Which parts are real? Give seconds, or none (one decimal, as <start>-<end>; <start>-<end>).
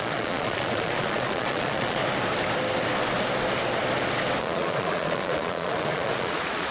2.0-4.4